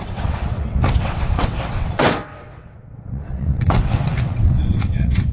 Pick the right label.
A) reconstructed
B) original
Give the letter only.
A